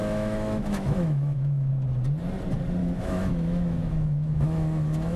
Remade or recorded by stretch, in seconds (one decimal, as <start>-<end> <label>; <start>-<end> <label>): 0.0-1.7 remade; 1.7-2.8 recorded; 2.8-5.2 remade